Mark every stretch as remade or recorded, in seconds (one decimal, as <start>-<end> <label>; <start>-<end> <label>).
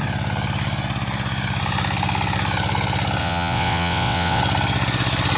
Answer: 0.0-3.2 recorded; 3.2-4.4 remade; 4.4-5.4 recorded